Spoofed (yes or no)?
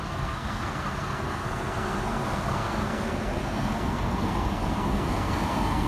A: yes